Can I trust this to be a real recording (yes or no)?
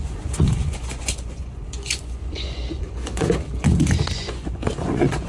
no